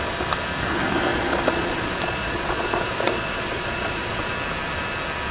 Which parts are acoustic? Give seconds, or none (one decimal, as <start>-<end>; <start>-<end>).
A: 0.0-1.1; 4.3-5.3

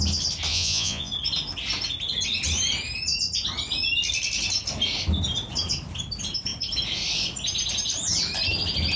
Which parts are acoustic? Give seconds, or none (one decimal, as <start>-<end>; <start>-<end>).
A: 0.0-0.5; 1.1-9.0

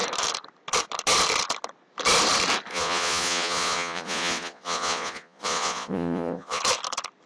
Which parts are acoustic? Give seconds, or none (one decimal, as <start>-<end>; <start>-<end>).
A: 0.0-2.7; 6.6-7.3